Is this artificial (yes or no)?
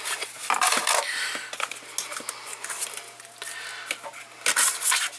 no